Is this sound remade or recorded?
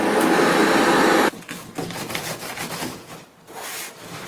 recorded